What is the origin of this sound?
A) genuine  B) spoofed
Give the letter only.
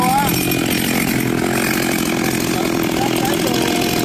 A